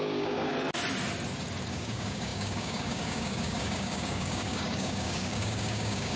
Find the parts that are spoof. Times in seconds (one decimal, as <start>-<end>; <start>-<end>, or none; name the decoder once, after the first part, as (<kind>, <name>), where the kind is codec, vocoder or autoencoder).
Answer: 0.0-0.5 (codec, DAC); 1.7-6.2